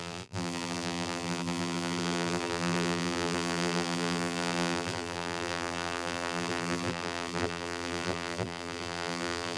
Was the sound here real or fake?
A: fake